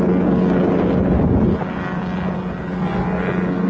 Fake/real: real